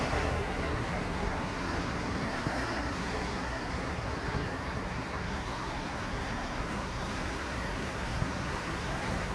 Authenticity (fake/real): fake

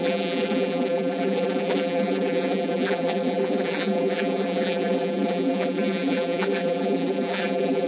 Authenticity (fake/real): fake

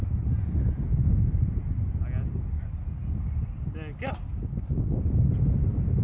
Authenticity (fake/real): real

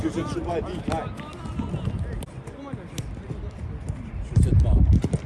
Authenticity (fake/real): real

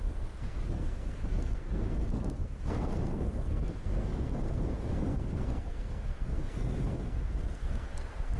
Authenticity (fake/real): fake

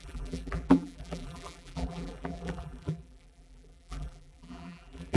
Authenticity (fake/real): fake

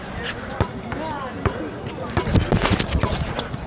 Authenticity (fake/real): real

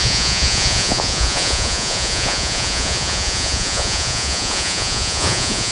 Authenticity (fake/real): fake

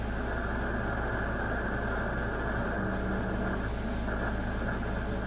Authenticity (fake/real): real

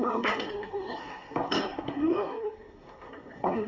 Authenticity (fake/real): fake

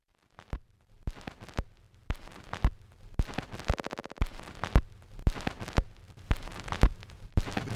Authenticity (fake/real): real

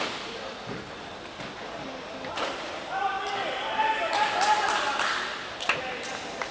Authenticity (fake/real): real